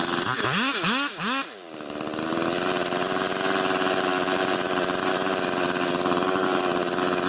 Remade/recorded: recorded